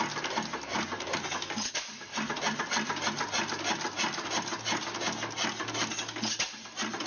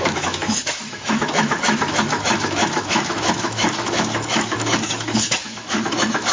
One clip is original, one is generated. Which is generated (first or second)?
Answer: second